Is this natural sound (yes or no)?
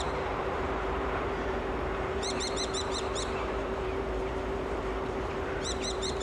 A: no